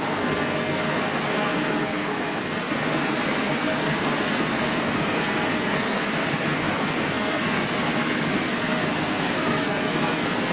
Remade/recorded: remade